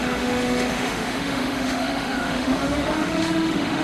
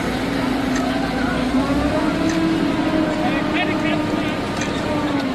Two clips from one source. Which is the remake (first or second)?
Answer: first